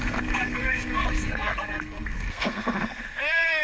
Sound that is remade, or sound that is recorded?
remade